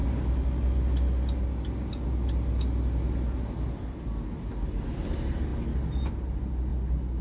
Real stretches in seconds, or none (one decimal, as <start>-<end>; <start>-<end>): 0.0-7.2